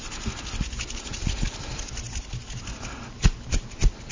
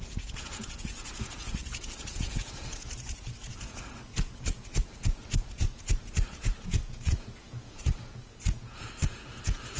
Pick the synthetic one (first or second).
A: second